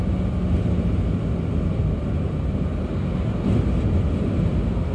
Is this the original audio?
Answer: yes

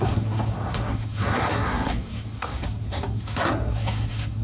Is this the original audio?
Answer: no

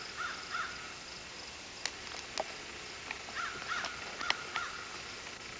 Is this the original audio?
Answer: yes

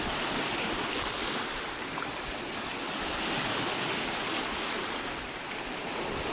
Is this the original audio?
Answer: yes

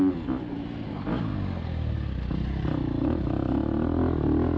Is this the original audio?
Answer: yes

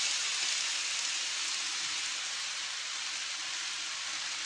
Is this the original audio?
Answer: yes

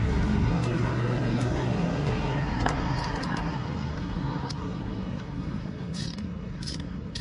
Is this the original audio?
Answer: no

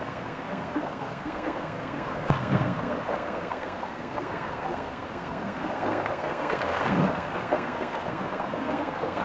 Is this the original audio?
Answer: no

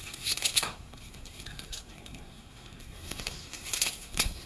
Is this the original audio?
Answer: no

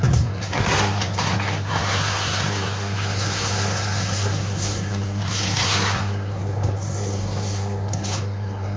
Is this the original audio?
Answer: no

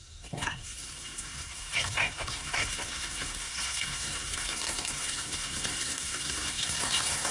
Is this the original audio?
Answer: no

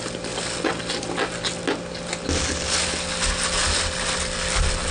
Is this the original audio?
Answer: yes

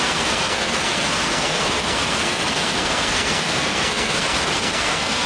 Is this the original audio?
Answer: no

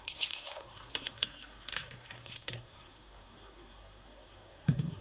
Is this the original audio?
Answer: no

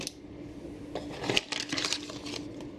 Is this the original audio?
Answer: yes